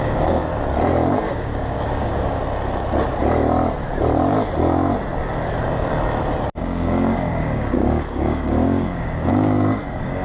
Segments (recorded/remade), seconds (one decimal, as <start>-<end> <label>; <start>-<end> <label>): 0.0-0.5 remade; 0.5-1.3 recorded; 1.3-2.4 remade; 2.4-6.6 recorded; 6.6-10.2 remade